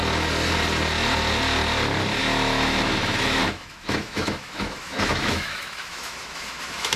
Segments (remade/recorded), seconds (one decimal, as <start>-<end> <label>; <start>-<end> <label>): 0.0-2.2 recorded; 2.2-7.0 remade